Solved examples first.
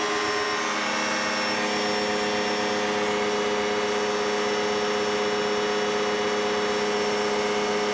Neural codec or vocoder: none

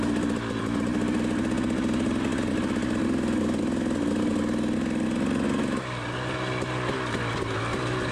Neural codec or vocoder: none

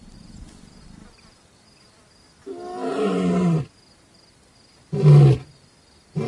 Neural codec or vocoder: none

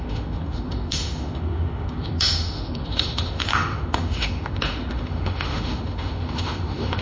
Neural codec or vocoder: autoencoder, DAC-VAE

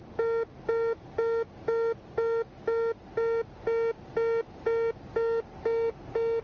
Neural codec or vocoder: none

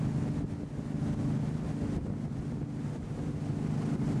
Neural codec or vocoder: none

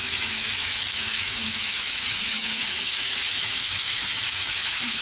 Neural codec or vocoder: autoencoder, DAC-VAE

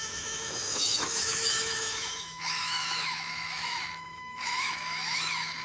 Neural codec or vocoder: autoencoder, DAC-VAE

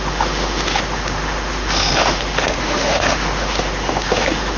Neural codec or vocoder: autoencoder, DAC-VAE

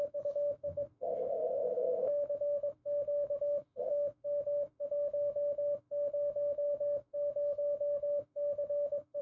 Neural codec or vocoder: autoencoder, DAC-VAE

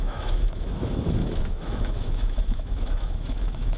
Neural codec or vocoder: autoencoder, DAC-VAE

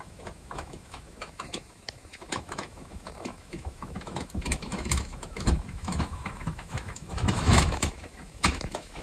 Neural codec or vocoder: autoencoder, DAC-VAE